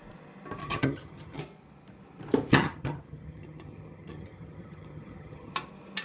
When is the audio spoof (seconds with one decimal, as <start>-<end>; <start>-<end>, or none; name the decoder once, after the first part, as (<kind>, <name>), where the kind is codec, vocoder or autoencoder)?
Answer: 0.6-1.4 (vocoder, HiFi-GAN); 2.5-5.5